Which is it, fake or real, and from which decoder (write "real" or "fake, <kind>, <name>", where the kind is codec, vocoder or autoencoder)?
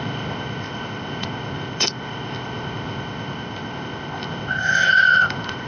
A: fake, codec, ZipCodec